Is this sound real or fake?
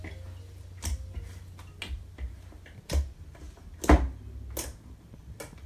real